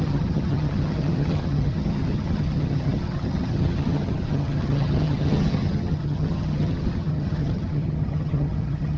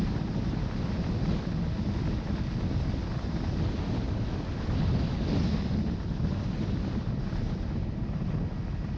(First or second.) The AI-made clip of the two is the first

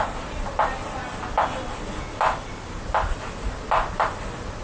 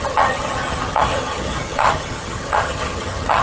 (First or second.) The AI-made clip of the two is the second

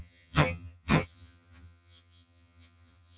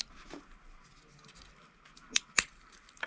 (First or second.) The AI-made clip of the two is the first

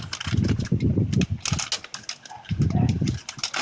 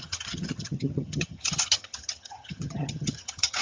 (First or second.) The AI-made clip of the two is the second